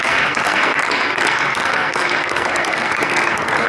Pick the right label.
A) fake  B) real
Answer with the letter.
A